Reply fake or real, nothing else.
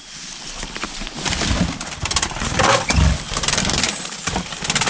fake